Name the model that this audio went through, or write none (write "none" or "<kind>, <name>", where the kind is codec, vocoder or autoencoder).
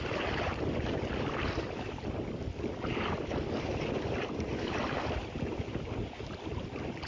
none